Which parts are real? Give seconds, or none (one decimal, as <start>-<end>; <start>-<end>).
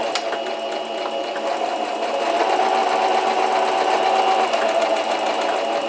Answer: 0.0-5.9